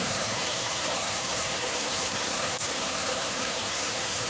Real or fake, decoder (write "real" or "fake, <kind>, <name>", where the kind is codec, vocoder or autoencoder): fake, codec, SNAC